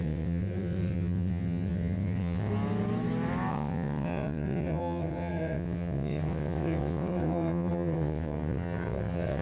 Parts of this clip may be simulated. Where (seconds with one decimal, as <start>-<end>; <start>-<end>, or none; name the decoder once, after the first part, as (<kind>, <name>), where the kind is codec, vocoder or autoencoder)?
0.0-2.5 (vocoder, WaveNeXt); 3.5-9.4